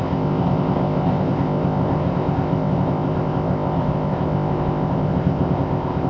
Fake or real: fake